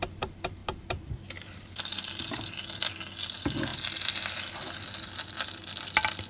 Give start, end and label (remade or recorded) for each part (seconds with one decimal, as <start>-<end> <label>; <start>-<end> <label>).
0.0-6.3 recorded